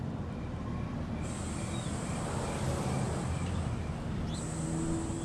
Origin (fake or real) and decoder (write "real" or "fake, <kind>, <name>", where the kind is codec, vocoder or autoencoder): real